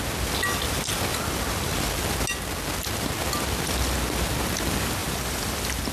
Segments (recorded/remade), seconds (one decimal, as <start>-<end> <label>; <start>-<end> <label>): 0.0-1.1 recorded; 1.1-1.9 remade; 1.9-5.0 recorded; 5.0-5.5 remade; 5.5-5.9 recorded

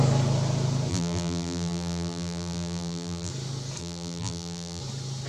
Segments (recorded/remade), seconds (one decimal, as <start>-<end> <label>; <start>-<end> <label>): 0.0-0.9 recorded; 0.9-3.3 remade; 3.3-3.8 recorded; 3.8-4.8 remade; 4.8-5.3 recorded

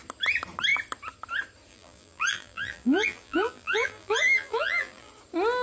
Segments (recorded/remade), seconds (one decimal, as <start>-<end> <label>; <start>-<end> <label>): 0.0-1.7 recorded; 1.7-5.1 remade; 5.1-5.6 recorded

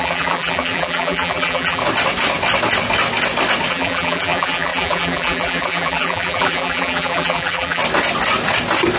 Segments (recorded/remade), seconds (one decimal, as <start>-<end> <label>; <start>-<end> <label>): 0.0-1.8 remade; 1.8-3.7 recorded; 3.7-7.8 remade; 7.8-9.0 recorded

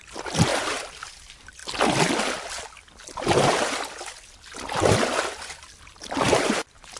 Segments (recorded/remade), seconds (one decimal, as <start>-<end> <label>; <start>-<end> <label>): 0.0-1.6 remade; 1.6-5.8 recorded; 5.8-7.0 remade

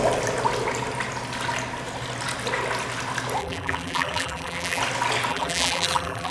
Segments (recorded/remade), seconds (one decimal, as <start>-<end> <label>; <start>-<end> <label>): 0.0-3.4 recorded; 3.4-4.8 remade; 4.8-5.3 recorded; 5.3-6.3 remade